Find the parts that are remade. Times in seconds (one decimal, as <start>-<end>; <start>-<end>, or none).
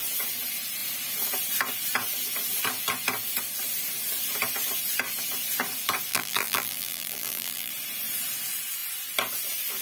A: 6.1-7.7